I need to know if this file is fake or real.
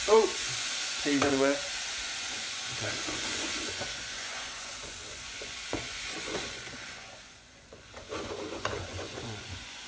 fake